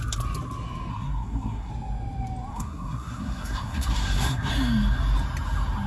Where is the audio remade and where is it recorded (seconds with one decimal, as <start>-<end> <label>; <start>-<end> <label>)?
0.0-0.9 recorded; 0.9-1.7 remade; 1.7-2.5 recorded; 2.5-4.5 remade; 4.5-5.9 recorded